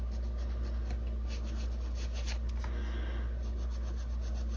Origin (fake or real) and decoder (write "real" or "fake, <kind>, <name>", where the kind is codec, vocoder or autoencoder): real